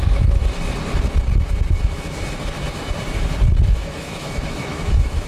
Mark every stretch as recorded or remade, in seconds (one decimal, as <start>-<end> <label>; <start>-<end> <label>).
0.0-0.4 remade; 0.4-3.6 recorded; 3.6-5.3 remade